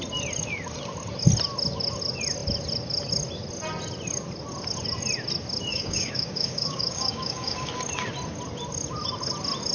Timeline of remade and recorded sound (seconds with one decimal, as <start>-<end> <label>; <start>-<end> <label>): 0.0-5.7 recorded; 5.7-7.7 remade; 7.7-9.7 recorded